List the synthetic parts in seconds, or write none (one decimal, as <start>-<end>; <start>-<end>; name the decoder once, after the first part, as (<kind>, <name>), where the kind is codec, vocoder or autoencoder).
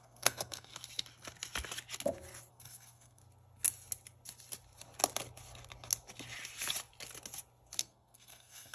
0.0-0.7 (codec, SNAC); 2.5-3.2; 7.8-8.7